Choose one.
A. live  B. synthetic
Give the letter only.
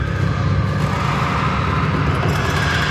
A